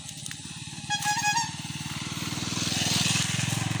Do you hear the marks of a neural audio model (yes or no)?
no